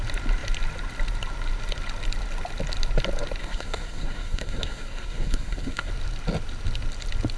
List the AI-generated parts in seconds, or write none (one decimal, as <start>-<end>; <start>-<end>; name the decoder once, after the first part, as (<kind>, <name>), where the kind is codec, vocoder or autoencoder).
3.4-5.9 (codec, SNAC)